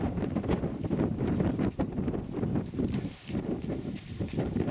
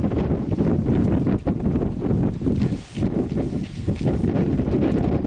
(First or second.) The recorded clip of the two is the second